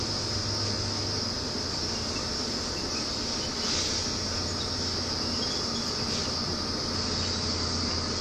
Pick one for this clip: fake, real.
real